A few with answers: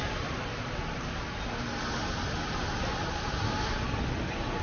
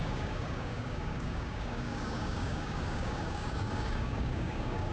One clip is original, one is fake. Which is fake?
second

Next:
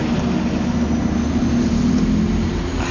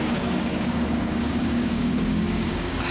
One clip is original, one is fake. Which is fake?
second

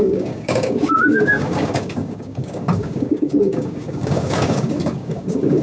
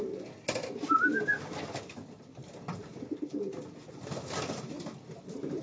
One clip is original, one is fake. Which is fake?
first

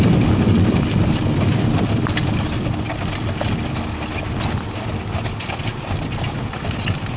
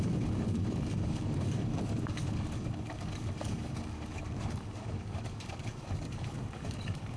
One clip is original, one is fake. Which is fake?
second